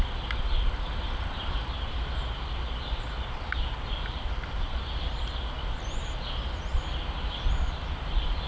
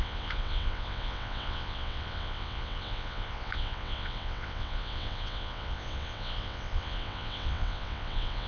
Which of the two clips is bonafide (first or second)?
first